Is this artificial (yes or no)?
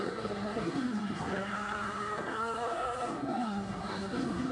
yes